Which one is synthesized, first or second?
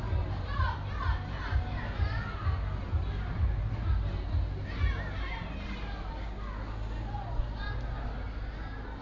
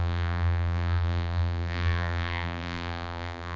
second